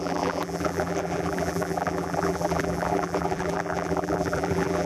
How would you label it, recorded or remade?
remade